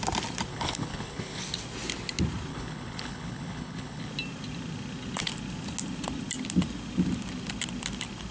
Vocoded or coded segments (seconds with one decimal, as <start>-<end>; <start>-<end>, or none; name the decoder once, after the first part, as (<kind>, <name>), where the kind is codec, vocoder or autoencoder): 0.5-1.4 (codec, HILCodec); 2.5-4.1

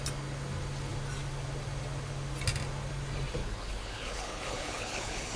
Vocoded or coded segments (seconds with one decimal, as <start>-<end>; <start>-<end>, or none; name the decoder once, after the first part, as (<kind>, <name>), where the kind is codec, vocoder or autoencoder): 3.4-5.4 (codec, HILCodec)

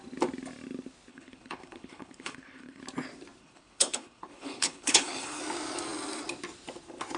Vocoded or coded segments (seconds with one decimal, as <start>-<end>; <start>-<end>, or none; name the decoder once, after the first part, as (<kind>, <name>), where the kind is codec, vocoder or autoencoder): 1.1-2.8 (codec, HILCodec); 3.4-5.4

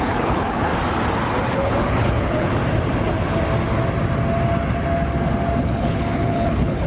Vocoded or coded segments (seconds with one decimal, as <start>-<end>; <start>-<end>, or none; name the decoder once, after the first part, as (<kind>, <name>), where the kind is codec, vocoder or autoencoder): 0.0-0.7 (codec, HILCodec); 1.5-2.6; 5.6-6.9

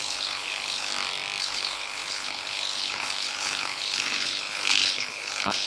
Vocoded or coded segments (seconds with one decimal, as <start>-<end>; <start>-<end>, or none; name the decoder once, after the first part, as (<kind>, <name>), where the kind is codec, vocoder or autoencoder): 0.0-0.9 (codec, HILCodec); 1.4-5.7

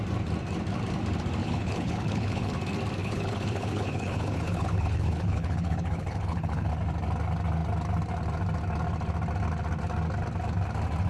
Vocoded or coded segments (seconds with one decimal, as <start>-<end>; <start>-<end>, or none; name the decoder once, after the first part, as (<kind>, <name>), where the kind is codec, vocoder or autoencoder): 1.4-2.5 (codec, HILCodec); 3.0-6.7

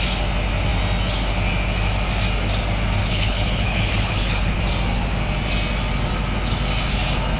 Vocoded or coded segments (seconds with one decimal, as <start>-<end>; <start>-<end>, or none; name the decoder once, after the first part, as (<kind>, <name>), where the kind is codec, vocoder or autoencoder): 3.0-4.6 (codec, HILCodec)